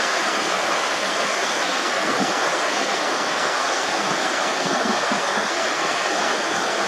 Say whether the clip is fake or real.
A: fake